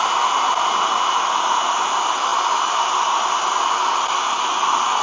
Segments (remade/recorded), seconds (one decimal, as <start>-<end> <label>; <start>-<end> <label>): 0.0-5.0 recorded